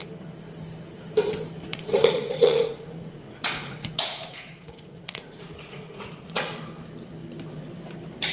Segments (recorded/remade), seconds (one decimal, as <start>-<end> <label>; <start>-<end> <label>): 0.0-1.7 recorded; 1.7-6.4 remade; 6.4-8.3 recorded